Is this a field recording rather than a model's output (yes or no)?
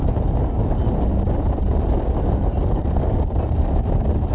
yes